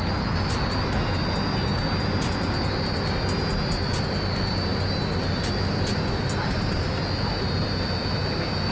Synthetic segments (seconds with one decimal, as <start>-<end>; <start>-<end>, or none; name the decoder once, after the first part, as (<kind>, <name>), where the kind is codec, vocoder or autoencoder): none